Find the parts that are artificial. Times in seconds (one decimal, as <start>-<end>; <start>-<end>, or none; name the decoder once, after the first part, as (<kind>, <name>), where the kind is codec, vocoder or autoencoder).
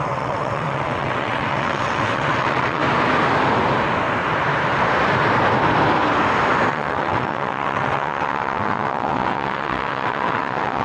0.0-2.8 (vocoder, WaveNeXt); 6.7-10.8